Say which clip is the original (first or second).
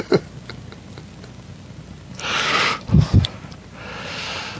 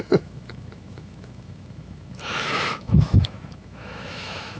first